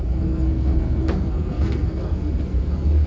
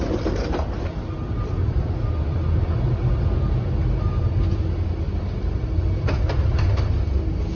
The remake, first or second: first